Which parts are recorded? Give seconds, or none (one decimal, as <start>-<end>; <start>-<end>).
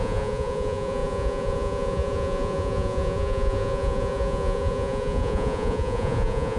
none